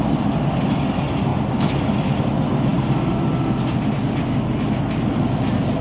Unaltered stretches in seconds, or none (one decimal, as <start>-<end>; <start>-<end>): 0.0-5.8